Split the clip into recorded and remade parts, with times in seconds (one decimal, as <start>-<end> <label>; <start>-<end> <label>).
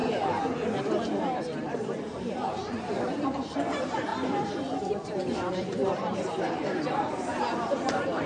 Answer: 0.0-4.1 remade; 4.1-5.5 recorded; 5.5-8.3 remade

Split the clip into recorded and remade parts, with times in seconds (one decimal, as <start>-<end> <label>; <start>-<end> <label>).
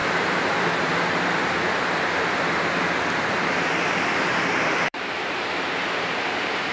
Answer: 0.0-1.4 remade; 1.4-4.3 recorded; 4.3-6.7 remade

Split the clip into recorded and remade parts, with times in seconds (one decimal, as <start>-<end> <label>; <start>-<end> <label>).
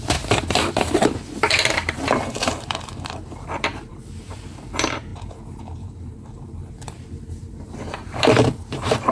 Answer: 0.0-5.1 remade; 5.1-5.6 recorded; 5.6-9.1 remade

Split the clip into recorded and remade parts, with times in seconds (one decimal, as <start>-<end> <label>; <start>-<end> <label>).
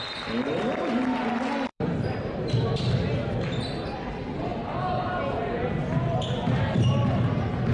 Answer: 0.0-1.7 recorded; 1.7-2.9 remade; 2.9-4.5 recorded; 4.5-5.2 remade; 5.2-7.7 recorded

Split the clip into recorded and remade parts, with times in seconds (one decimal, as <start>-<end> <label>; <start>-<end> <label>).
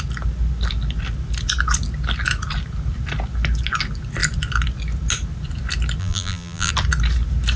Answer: 0.0-6.0 recorded; 6.0-6.7 remade; 6.7-7.6 recorded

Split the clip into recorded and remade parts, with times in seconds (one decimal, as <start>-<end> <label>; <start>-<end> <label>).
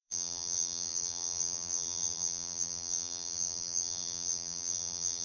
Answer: 0.0-5.2 remade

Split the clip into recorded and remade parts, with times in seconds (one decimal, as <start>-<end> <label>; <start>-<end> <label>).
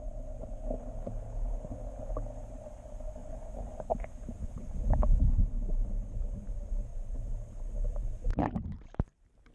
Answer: 0.0-3.2 recorded; 3.2-5.3 remade; 5.3-6.9 recorded; 6.9-9.5 remade